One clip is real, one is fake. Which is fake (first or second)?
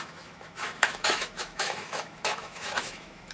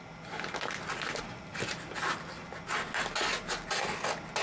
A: first